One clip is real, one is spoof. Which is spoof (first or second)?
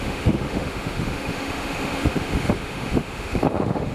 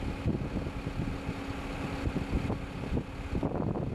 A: first